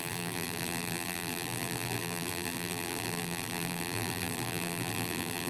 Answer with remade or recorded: remade